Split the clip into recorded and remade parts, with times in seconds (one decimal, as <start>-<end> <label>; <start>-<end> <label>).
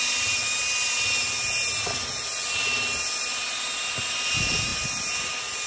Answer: 0.0-5.7 recorded